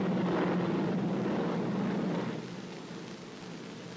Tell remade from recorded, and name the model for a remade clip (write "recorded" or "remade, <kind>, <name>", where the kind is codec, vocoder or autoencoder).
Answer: recorded